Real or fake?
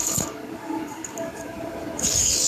fake